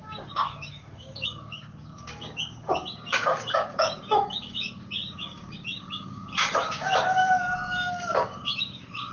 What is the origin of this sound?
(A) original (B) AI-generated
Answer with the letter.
B